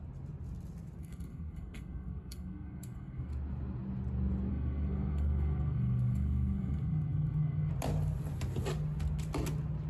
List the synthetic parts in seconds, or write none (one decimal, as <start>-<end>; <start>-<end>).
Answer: 1.0-3.3; 4.5-7.7